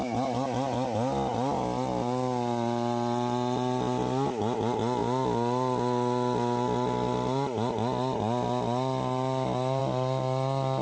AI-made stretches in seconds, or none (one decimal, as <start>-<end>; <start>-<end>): none